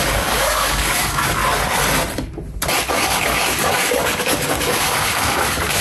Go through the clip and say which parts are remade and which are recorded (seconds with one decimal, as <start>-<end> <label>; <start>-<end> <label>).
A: 0.0-1.4 remade; 1.4-2.9 recorded; 2.9-5.8 remade